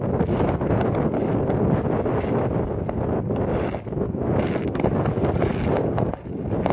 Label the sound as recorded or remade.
recorded